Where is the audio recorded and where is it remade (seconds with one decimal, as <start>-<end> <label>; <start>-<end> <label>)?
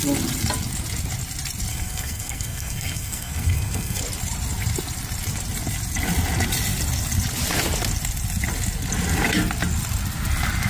0.0-1.7 recorded; 1.7-4.0 remade; 4.0-10.7 recorded